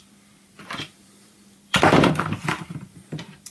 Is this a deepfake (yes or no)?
yes